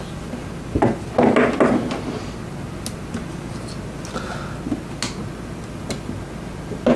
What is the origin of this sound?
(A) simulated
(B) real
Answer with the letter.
B